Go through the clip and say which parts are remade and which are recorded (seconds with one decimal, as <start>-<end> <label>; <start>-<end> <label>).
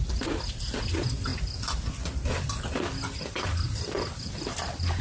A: 0.0-1.3 recorded; 1.3-4.3 remade; 4.3-5.0 recorded